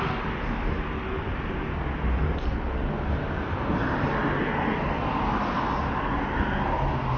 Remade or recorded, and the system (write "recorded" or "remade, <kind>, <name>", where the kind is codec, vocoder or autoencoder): recorded